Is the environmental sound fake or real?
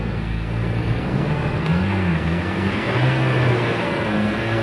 fake